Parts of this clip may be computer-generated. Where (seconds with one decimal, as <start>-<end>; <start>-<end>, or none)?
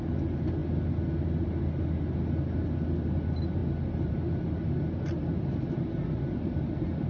none